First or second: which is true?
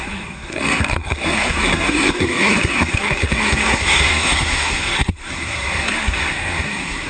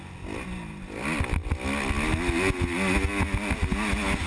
second